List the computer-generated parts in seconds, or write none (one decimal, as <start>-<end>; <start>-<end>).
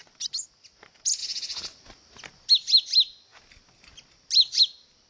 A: none